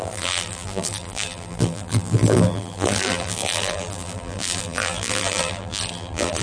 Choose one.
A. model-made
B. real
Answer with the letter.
A